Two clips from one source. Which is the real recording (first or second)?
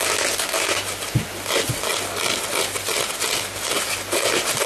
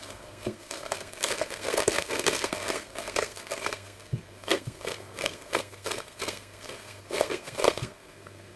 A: first